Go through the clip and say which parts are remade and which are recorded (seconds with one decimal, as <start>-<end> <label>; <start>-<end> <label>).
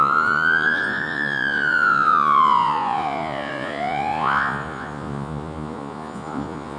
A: 0.0-6.8 remade